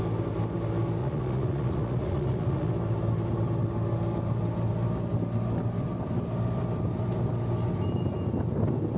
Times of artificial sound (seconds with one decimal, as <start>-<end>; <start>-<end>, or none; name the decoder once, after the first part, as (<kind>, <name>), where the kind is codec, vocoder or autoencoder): 1.0-2.7 (vocoder, Vocos)